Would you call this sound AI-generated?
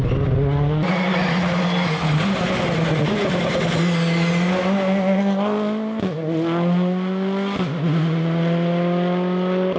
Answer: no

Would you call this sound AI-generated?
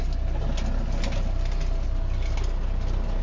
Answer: no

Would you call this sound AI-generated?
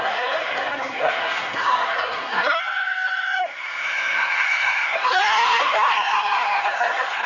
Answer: yes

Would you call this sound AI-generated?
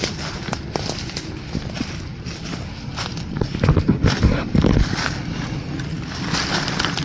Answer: no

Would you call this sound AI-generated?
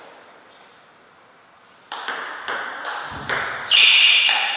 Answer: no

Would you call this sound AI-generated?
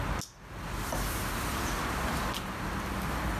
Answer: no